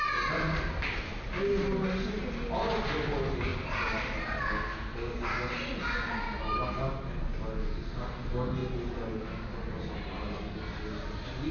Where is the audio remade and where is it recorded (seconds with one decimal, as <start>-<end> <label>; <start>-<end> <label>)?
0.0-11.5 recorded